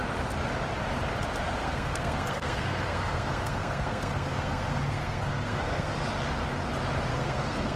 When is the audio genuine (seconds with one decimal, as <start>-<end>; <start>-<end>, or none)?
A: 0.0-1.6; 5.9-7.1